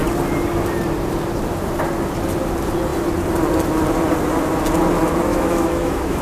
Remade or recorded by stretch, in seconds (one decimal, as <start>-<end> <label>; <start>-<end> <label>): 0.0-5.3 recorded; 5.3-6.2 remade